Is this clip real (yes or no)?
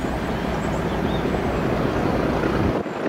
yes